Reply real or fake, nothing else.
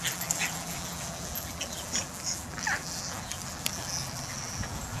fake